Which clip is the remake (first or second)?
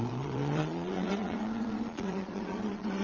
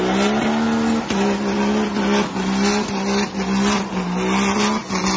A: first